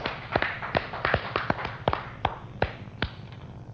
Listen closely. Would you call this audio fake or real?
fake